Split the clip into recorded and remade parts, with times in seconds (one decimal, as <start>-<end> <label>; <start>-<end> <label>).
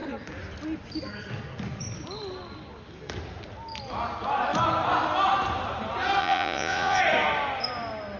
0.0-6.2 recorded; 6.2-7.0 remade; 7.0-8.2 recorded